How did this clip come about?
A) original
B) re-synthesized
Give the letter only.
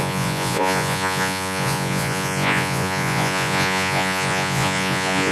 B